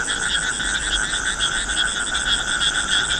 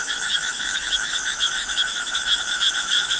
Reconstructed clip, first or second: second